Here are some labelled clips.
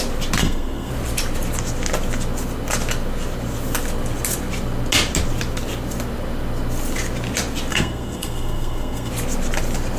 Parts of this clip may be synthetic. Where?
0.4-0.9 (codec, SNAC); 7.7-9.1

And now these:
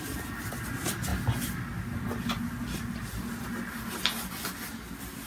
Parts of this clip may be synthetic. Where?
none

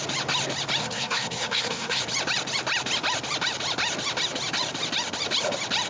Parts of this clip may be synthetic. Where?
0.8-2.0 (codec, SNAC)

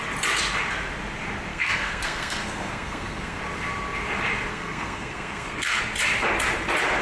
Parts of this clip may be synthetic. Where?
1.5-3.4 (codec, SNAC); 4.5-5.8